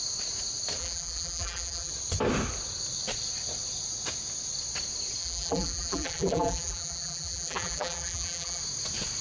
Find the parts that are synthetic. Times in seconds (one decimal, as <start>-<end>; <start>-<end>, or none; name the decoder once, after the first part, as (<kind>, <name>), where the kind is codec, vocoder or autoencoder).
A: 0.8-1.9 (vocoder, BigVGAN v2); 5.2-8.6